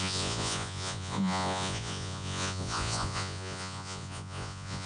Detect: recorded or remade remade